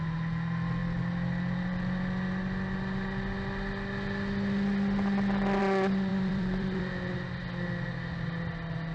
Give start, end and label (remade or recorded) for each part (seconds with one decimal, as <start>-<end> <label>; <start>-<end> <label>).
0.0-6.1 recorded; 6.1-6.8 remade; 6.8-8.9 recorded